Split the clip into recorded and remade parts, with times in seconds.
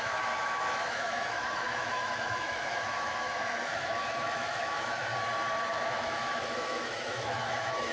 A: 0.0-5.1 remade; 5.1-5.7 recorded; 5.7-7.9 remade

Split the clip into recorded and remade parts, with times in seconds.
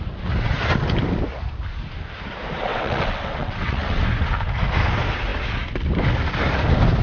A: 0.0-2.7 recorded; 2.7-4.0 remade; 4.0-7.0 recorded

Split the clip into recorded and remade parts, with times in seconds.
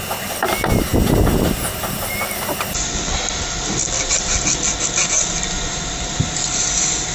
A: 0.0-7.1 recorded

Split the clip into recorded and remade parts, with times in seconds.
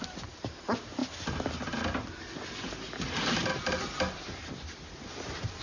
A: 0.0-5.6 recorded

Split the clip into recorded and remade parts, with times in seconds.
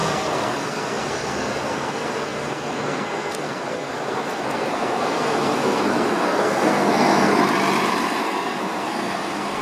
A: 0.0-7.3 remade; 7.3-8.2 recorded; 8.2-9.6 remade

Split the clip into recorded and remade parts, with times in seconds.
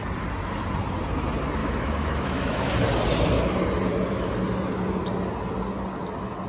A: 0.0-1.6 recorded; 1.6-2.7 remade; 2.7-6.5 recorded